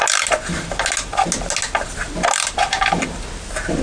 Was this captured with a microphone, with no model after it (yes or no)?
yes